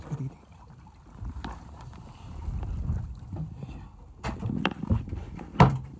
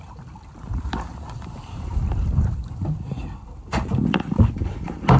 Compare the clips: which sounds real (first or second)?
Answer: first